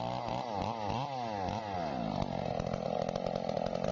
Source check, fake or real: real